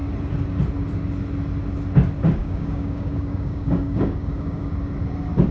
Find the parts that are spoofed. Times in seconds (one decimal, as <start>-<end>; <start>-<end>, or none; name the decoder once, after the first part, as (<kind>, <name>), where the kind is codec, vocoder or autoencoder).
2.4-4.7 (codec, DAC)